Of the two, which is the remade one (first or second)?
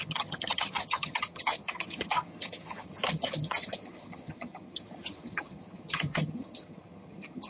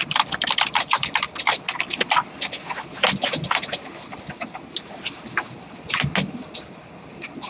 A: first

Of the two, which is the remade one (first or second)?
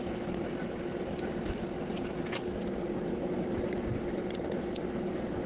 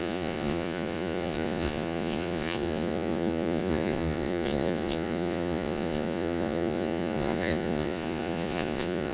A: second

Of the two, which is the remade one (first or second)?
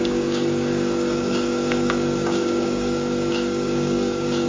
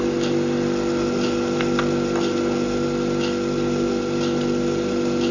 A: first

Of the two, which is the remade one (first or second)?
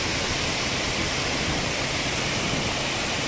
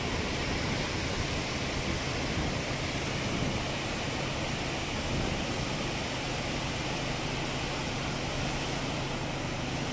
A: first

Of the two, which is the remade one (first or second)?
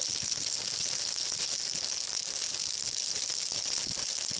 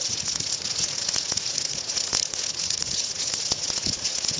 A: second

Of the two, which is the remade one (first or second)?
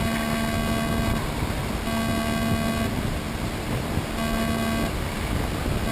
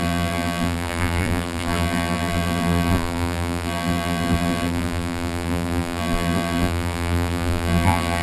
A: second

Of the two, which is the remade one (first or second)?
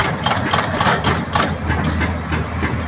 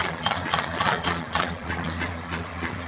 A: second